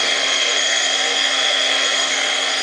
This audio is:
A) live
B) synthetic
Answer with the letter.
B